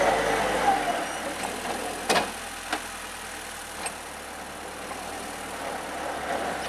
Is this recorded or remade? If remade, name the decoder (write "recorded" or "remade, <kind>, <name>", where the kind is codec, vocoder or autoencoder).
recorded